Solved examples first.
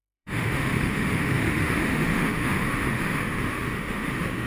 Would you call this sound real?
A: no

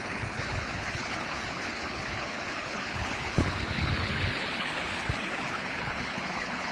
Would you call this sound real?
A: no